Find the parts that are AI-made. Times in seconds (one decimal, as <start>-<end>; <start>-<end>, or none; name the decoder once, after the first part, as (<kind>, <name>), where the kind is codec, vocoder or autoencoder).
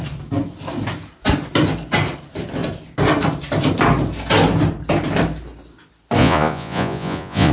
6.2-7.5 (vocoder, Vocos)